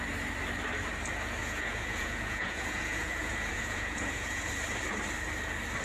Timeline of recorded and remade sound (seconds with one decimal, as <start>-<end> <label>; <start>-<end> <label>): 0.0-1.4 recorded; 1.4-4.5 remade; 4.5-5.8 recorded

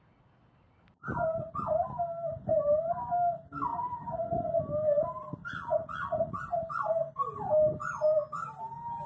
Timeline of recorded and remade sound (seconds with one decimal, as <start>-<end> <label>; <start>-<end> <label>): 0.0-3.7 recorded; 3.7-4.6 remade; 4.6-5.4 recorded; 5.4-6.4 remade; 6.4-9.1 recorded

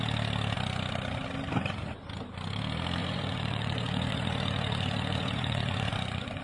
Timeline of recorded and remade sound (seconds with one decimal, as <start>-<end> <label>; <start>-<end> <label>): 0.0-3.0 recorded; 3.0-6.4 remade

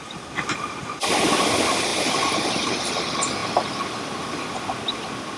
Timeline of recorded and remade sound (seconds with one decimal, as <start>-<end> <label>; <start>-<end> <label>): 0.0-5.4 recorded

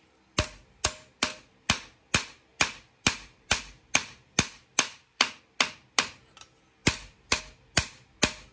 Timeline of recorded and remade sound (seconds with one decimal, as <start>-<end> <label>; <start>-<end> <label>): 0.0-2.5 recorded; 2.5-5.4 remade; 5.4-6.8 recorded; 6.8-7.4 remade; 7.4-8.5 recorded

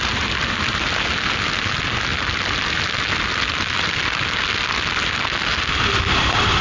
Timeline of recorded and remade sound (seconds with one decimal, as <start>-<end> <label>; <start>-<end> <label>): 0.0-6.6 recorded

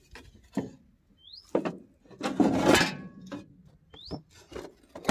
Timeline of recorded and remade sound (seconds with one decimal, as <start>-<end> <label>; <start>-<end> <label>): 0.0-5.1 recorded